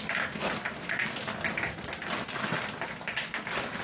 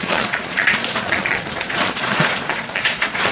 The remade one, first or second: second